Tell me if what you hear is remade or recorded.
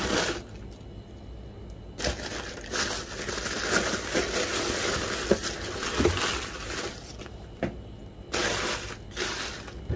recorded